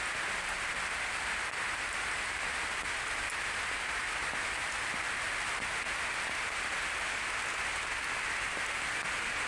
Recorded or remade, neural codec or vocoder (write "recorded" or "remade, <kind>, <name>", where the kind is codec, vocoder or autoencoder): recorded